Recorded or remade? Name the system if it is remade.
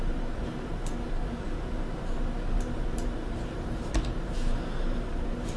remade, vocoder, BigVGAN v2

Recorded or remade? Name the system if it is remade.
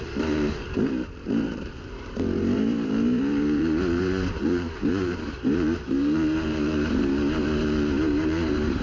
remade, vocoder, BigVGAN v2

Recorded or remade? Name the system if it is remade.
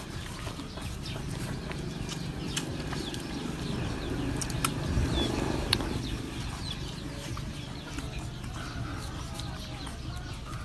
recorded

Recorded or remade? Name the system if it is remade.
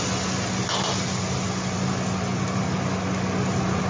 recorded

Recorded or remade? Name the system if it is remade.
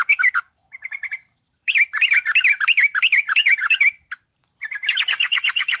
remade, vocoder, BigVGAN v2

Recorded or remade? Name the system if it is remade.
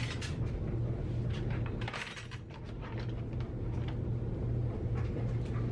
recorded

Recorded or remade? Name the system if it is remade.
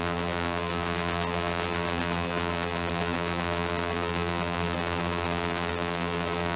remade, vocoder, BigVGAN v2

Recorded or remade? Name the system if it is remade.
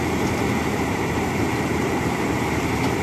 remade, vocoder, BigVGAN v2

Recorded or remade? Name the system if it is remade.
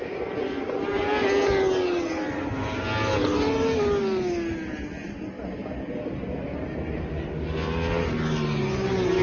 recorded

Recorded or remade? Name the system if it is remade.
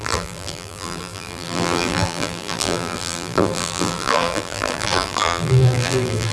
remade, vocoder, BigVGAN v2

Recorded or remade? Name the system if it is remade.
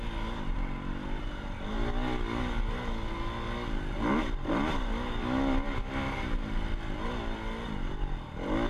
recorded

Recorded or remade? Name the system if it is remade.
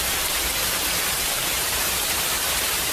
remade, vocoder, BigVGAN v2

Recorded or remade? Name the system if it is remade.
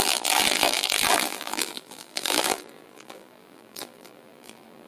remade, vocoder, BigVGAN v2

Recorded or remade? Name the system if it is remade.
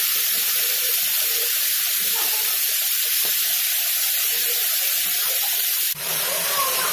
remade, vocoder, BigVGAN v2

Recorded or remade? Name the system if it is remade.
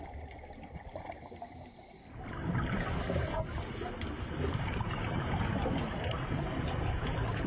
remade, vocoder, BigVGAN v2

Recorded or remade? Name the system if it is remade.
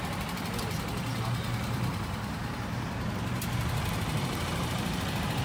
remade, vocoder, BigVGAN v2